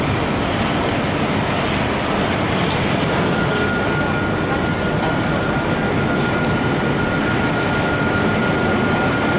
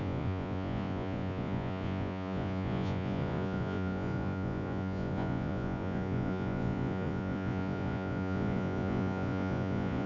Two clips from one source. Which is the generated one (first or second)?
second